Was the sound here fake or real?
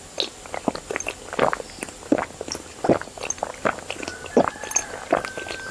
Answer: real